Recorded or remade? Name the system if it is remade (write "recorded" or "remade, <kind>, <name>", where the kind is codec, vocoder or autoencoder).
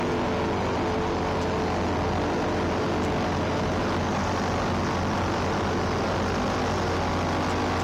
recorded